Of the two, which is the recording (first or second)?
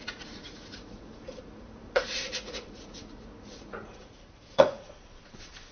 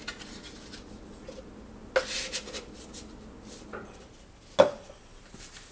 second